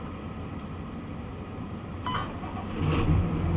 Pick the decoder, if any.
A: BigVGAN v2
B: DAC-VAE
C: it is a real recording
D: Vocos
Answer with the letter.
A